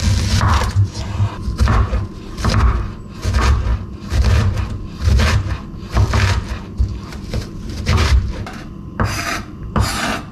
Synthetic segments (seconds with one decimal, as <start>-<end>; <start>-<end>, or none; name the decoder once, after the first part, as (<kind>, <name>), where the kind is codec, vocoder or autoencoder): 6.9-9.9 (vocoder, BigVGAN v2)